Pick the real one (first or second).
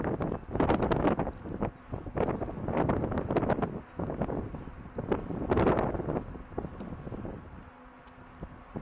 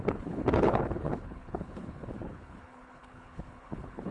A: first